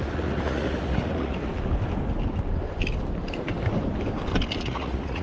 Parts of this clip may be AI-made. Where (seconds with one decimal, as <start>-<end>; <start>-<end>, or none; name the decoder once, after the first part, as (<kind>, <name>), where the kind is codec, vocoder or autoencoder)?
0.0-1.5 (vocoder, Vocos); 4.6-5.2